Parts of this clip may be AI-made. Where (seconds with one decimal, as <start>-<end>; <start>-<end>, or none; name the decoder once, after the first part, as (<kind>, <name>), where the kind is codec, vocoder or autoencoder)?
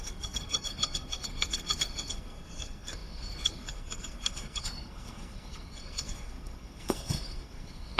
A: 0.0-8.0 (codec, SNAC)